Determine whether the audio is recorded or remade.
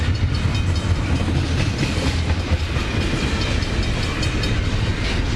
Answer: recorded